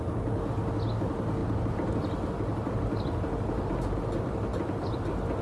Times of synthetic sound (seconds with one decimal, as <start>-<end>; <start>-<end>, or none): none